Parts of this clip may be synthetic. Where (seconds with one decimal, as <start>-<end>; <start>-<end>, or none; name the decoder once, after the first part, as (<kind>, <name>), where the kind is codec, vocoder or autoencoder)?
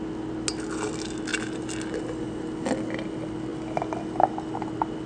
none